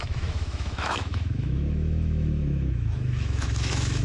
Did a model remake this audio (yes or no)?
yes